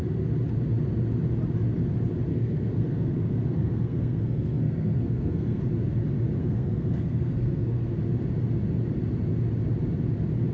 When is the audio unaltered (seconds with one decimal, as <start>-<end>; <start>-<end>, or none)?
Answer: 0.0-2.3; 5.6-6.4; 7.9-10.5